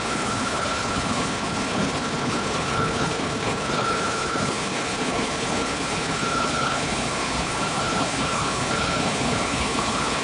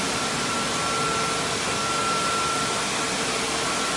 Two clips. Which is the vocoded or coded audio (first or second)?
first